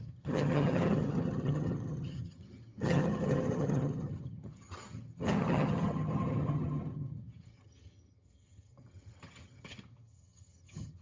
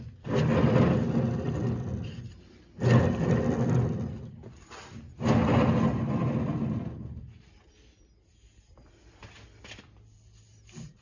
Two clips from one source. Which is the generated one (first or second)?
first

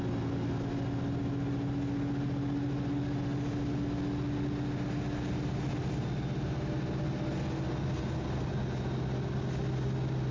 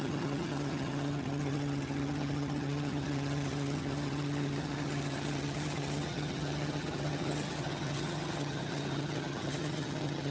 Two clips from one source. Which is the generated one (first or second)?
second